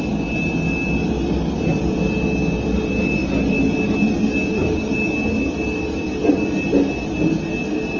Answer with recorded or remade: recorded